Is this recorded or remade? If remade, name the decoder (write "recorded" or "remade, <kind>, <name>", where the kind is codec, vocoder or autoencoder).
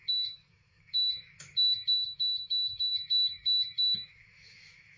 remade, autoencoder, DAC-VAE